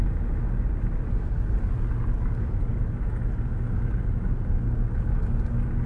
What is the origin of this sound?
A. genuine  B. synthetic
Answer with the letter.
A